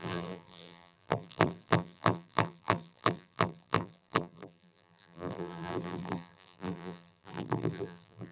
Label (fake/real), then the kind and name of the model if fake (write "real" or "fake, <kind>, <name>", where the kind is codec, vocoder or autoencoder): fake, vocoder, BigVGAN v2